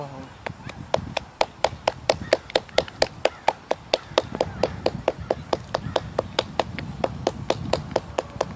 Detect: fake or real real